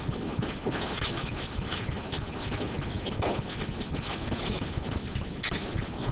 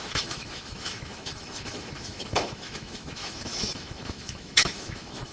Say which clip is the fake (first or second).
second